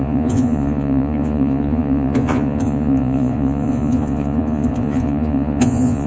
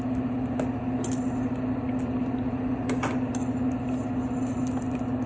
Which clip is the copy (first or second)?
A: first